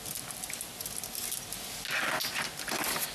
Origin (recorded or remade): recorded